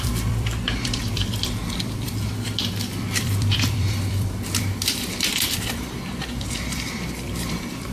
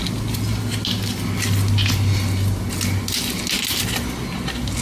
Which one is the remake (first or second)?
first